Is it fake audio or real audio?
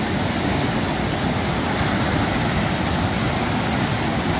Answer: real